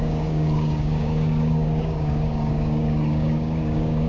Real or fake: fake